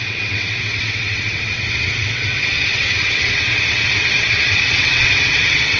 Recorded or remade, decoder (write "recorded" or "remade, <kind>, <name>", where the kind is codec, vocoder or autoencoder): remade, vocoder, WaveNeXt